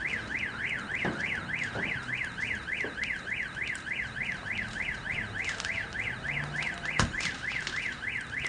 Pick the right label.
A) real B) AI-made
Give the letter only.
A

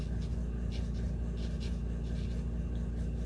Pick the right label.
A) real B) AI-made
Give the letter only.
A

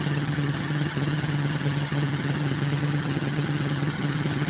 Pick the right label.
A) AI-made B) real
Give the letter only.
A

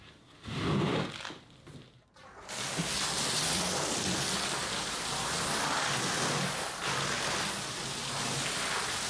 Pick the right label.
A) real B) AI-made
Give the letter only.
A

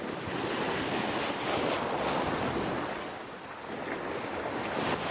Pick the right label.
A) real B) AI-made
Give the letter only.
A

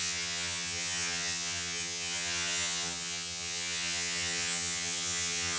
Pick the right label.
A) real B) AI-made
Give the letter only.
B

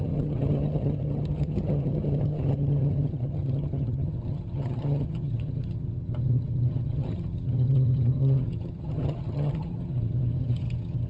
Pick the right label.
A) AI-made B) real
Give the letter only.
A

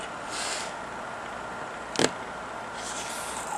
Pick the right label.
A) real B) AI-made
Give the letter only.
A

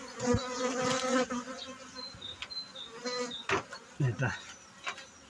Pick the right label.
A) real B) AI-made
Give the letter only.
A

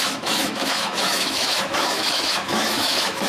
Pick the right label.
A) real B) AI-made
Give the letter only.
B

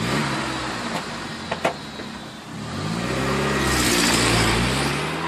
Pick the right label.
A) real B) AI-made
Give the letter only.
A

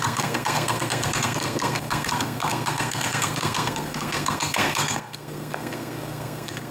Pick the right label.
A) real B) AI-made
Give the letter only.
B